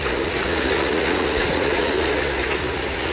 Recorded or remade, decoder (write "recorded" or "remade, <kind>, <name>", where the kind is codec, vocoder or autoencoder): remade, vocoder, Vocos